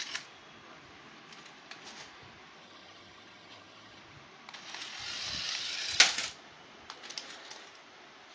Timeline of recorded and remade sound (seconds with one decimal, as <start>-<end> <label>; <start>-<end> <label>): 0.0-2.6 recorded; 2.6-4.0 remade; 4.0-8.3 recorded